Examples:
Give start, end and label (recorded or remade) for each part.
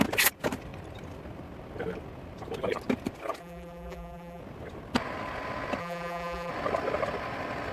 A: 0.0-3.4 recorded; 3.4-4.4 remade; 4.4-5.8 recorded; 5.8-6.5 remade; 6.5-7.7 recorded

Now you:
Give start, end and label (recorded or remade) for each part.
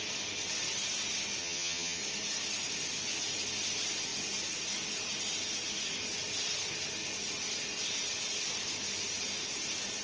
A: 0.0-1.4 recorded; 1.4-2.0 remade; 2.0-10.0 recorded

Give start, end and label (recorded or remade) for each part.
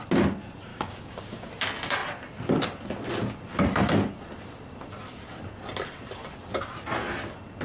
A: 0.0-0.7 recorded; 0.7-1.5 remade; 1.5-7.6 recorded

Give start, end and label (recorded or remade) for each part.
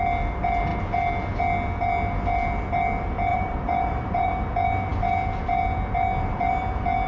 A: 0.0-3.3 recorded; 3.3-4.4 remade; 4.4-7.1 recorded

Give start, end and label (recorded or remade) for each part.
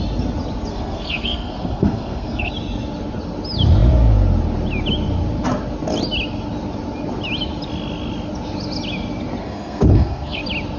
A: 0.0-0.7 recorded; 0.7-2.5 remade; 2.5-9.4 recorded; 9.4-10.4 remade; 10.4-10.8 recorded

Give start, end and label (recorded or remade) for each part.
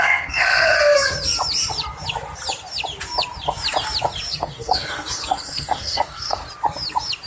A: 0.0-1.1 remade; 1.1-4.3 recorded; 4.3-6.4 remade; 6.4-7.3 recorded